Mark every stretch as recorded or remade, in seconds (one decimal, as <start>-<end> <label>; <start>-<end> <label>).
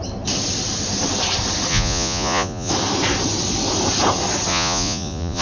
0.0-1.7 recorded; 1.7-2.7 remade; 2.7-4.5 recorded; 4.5-5.4 remade